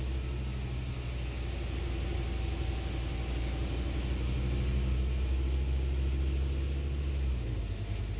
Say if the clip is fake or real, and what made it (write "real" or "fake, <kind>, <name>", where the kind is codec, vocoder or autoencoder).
real